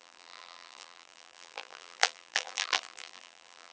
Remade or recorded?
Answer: remade